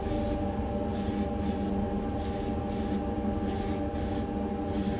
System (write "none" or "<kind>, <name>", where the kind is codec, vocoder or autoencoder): none